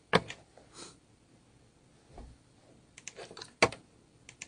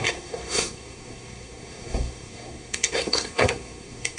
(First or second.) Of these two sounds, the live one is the first